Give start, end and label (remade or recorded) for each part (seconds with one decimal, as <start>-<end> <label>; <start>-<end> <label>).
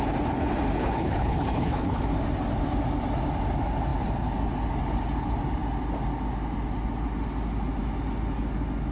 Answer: 0.0-0.8 recorded; 0.8-2.0 remade; 2.0-8.9 recorded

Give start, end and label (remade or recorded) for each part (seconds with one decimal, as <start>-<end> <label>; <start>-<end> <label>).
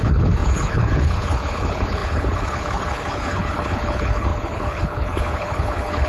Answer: 0.0-6.1 remade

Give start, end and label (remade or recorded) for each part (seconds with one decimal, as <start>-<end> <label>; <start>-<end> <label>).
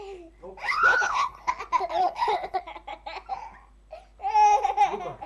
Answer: 0.0-0.6 recorded; 0.6-1.5 remade; 1.5-2.0 recorded; 2.0-2.6 remade; 2.6-5.3 recorded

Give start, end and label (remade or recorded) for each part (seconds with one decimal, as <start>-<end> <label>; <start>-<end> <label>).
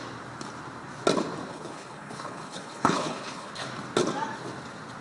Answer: 0.0-1.5 recorded; 1.5-3.5 remade; 3.5-5.0 recorded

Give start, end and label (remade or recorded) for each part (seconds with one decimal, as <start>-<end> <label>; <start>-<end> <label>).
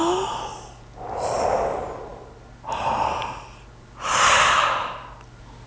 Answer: 0.0-5.7 recorded